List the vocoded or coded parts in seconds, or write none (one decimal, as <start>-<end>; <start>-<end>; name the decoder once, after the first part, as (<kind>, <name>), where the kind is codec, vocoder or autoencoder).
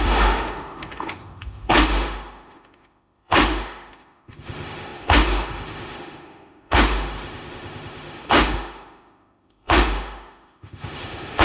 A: 0.0-11.4 (autoencoder, DAC-VAE)